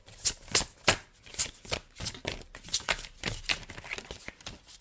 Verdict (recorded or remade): recorded